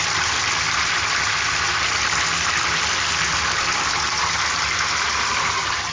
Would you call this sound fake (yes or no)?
no